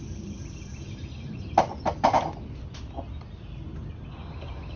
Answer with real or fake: real